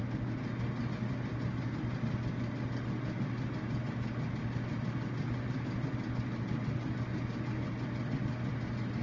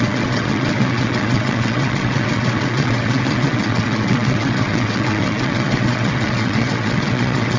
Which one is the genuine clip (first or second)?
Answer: first